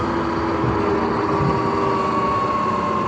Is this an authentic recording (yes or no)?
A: yes